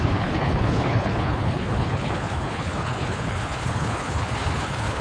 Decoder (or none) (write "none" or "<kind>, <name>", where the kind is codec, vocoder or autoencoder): codec, HILCodec